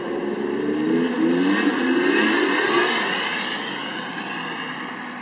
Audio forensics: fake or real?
real